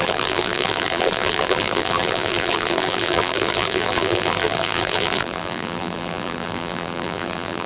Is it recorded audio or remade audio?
remade